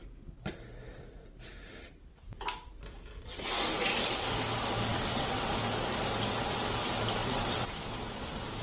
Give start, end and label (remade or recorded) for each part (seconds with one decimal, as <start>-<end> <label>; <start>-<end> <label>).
0.0-4.9 recorded; 4.9-5.5 remade; 5.5-7.2 recorded; 7.2-7.7 remade; 7.7-8.6 recorded

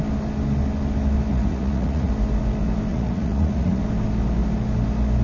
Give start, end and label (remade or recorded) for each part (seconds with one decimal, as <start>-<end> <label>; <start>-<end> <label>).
0.0-1.3 recorded; 1.3-2.1 remade; 2.1-2.9 recorded; 2.9-3.8 remade; 3.8-5.2 recorded